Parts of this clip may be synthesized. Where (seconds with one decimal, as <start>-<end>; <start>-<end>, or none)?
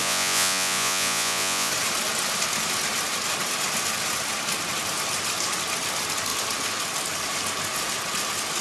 0.0-1.7